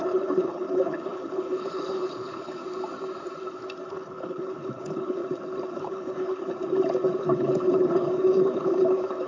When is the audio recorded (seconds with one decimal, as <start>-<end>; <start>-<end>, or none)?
2.6-3.9; 5.2-5.8; 6.4-7.2